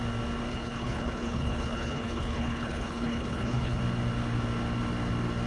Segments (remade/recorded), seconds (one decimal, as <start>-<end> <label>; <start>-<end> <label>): 0.0-0.5 recorded; 0.5-3.8 remade; 3.8-5.5 recorded